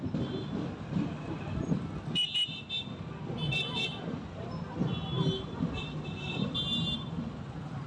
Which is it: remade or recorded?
recorded